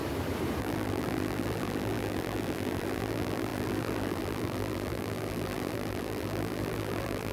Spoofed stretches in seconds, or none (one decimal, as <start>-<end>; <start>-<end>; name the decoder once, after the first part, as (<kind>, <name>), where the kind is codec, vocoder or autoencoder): 0.6-7.3 (vocoder, BigVGAN v2)